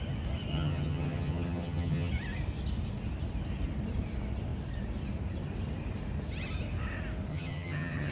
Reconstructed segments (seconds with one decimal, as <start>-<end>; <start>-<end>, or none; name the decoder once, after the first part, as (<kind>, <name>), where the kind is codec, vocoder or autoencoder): 0.5-2.1 (vocoder, HiFi-GAN); 7.3-8.1